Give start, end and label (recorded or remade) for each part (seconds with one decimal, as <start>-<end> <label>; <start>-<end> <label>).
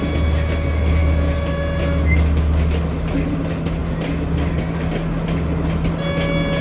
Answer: 0.0-6.6 recorded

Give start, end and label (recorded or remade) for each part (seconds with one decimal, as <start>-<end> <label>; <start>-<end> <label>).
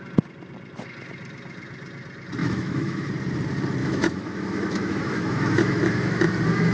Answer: 0.0-2.4 recorded; 2.4-3.1 remade; 3.1-3.8 recorded; 3.8-6.3 remade; 6.3-6.7 recorded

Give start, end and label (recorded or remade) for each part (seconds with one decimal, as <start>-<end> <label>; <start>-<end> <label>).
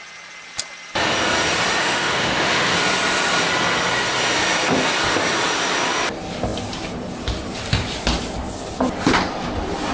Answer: 0.0-1.8 recorded; 1.8-2.7 remade; 2.7-9.9 recorded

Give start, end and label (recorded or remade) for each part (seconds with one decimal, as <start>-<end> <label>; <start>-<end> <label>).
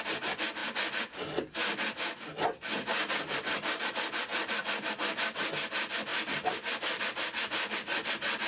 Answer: 0.0-8.5 recorded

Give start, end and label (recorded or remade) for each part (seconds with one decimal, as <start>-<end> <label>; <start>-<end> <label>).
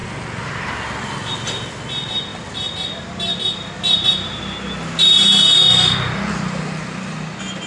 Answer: 0.0-7.7 recorded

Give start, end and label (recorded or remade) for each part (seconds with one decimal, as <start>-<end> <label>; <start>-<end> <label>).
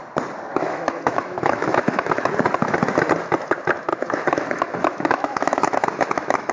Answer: 0.0-0.5 recorded; 0.5-2.3 remade; 2.3-3.9 recorded; 3.9-6.5 remade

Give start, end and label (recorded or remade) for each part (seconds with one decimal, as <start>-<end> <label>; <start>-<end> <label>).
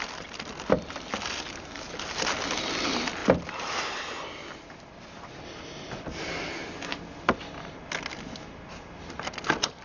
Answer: 0.0-9.8 recorded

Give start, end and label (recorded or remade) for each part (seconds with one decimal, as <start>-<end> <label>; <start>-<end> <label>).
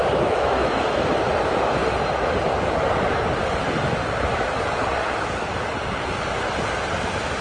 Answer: 0.0-1.2 remade; 1.2-7.4 recorded